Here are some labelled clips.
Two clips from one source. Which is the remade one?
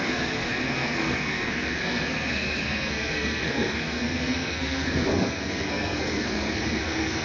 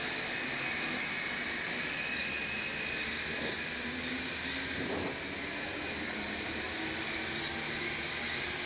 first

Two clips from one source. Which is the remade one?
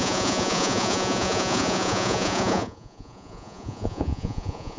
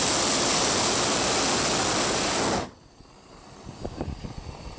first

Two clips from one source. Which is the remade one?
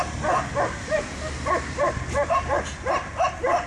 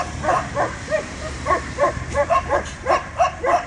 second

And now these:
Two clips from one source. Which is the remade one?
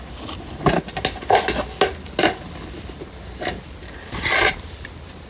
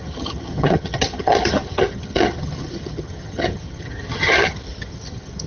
second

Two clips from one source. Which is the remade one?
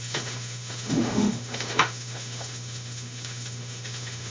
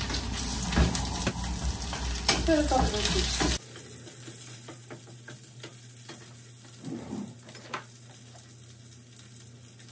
first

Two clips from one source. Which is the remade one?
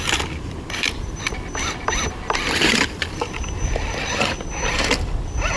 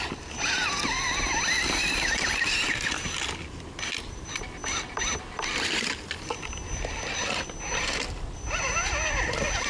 first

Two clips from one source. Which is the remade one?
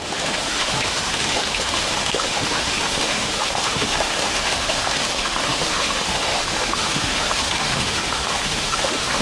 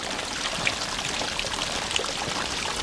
first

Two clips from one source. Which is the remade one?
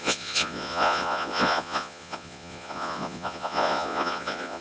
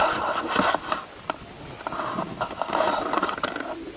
first